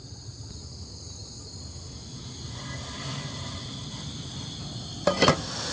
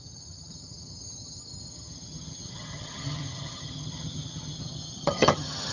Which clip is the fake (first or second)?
second